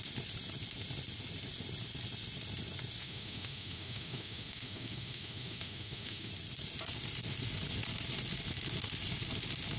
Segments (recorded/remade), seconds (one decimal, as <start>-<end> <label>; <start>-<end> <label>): 0.0-3.0 recorded; 3.0-6.3 remade; 6.3-9.8 recorded